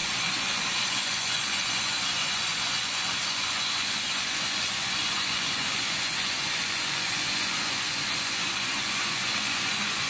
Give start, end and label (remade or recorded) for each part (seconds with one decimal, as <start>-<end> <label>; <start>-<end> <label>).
0.0-10.1 remade